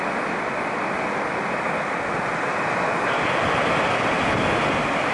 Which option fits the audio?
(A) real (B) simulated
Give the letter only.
A